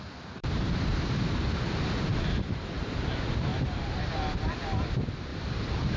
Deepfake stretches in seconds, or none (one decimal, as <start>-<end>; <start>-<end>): 0.4-3.1; 3.5-4.1; 5.3-6.0